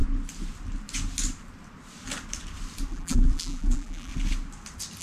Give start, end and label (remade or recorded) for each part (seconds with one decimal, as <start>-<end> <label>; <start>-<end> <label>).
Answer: 0.0-2.9 recorded; 2.9-4.1 remade; 4.1-5.0 recorded